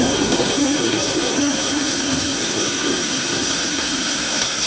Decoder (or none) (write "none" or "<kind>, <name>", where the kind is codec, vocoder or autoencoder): codec, SNAC